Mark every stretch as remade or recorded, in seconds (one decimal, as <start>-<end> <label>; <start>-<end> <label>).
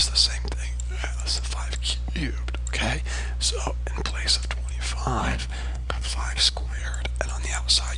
0.0-5.2 recorded; 5.2-6.8 remade; 6.8-8.0 recorded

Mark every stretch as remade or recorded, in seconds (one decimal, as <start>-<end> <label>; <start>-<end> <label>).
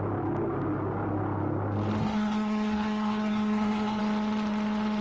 0.0-2.0 recorded; 2.0-4.0 remade; 4.0-5.0 recorded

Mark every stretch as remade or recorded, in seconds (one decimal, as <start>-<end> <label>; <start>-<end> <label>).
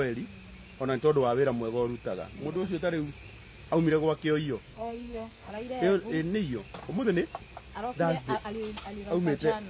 0.0-4.6 recorded; 4.6-5.5 remade; 5.5-9.7 recorded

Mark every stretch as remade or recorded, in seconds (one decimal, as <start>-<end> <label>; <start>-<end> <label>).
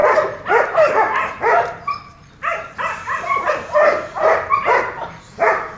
0.0-5.8 recorded